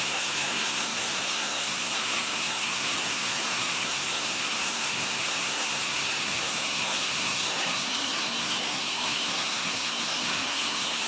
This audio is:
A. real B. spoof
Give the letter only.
B